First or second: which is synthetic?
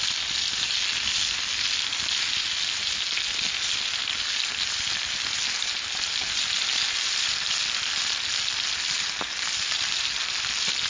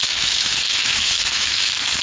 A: second